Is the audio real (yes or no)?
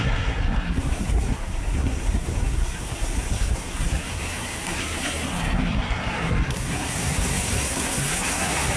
no